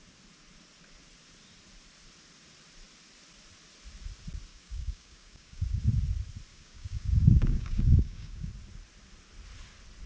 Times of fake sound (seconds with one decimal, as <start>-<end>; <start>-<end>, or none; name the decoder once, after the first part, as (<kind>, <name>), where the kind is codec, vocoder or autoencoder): 4.5-5.8 (codec, DAC); 6.5-8.5